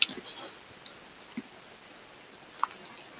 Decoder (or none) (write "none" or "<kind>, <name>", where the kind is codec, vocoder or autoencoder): none